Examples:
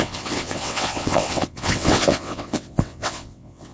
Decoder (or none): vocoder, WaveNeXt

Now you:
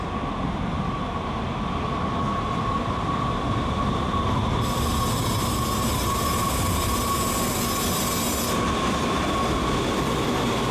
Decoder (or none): none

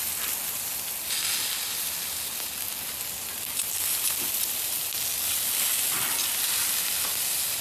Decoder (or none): none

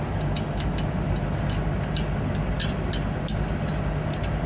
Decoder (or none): none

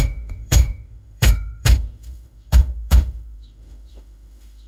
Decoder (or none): autoencoder, DAC-VAE